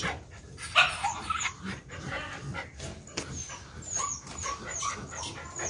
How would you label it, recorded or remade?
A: recorded